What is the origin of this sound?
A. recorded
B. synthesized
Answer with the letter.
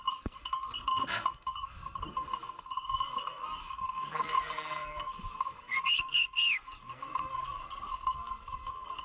B